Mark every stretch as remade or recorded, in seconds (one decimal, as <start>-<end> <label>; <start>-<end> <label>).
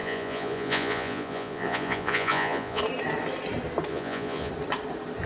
0.0-2.8 remade; 2.8-3.9 recorded; 3.9-4.5 remade; 4.5-5.3 recorded